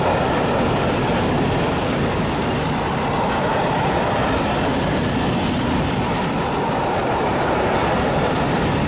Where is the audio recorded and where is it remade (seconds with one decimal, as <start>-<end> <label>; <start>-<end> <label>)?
0.0-8.9 recorded